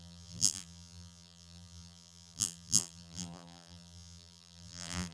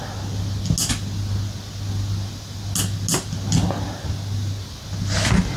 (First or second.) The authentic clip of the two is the second